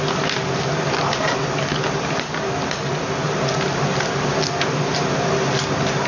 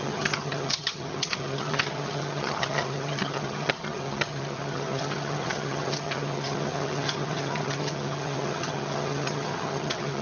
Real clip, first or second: first